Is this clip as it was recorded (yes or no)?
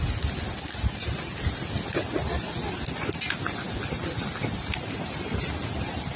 yes